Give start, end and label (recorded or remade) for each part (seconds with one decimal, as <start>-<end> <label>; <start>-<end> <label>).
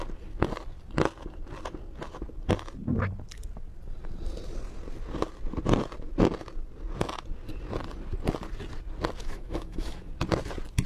0.0-9.2 recorded; 9.2-10.1 remade; 10.1-10.9 recorded